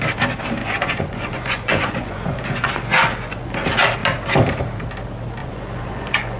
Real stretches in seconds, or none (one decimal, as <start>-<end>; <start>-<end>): 0.0-0.6; 3.5-5.4